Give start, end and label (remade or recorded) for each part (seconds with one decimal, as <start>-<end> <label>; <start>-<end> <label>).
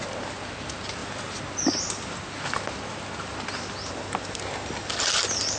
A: 0.0-5.6 recorded